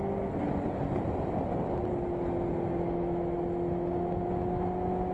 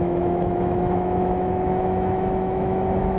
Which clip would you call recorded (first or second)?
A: first